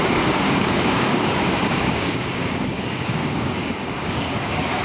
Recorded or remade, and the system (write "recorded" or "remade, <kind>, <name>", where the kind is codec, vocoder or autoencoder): remade, codec, DAC